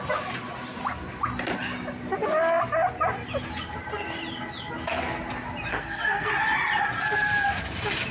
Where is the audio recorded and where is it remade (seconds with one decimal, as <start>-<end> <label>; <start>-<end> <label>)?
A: 0.0-5.7 recorded; 5.7-6.3 remade; 6.3-8.1 recorded